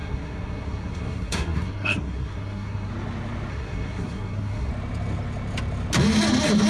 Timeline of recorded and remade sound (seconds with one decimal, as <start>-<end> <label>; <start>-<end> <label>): 0.0-2.9 remade; 2.9-3.5 recorded; 3.5-4.7 remade; 4.7-6.7 recorded

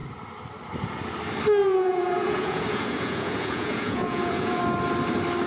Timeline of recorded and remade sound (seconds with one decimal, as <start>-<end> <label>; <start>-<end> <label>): 0.0-1.6 recorded; 1.6-4.6 remade; 4.6-5.5 recorded